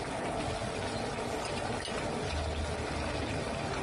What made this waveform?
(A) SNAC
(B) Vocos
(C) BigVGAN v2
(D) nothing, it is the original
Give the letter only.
D